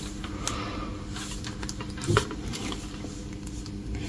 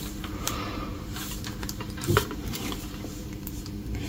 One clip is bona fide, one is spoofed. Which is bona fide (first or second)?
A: first